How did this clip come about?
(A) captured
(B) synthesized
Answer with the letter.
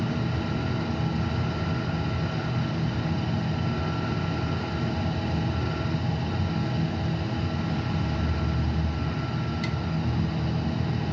A